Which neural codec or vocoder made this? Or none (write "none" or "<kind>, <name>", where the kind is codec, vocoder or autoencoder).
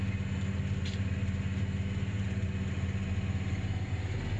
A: none